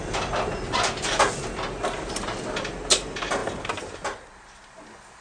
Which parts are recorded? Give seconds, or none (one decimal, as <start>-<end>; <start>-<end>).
0.0-5.2